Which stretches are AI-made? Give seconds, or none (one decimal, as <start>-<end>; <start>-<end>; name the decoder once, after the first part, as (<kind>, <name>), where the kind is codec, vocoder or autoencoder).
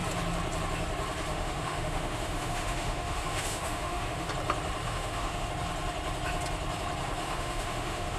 1.3-4.3 (autoencoder, DAC-VAE); 4.8-5.5; 7.2-8.2